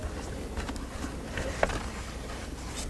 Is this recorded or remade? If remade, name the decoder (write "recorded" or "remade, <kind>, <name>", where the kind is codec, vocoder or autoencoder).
recorded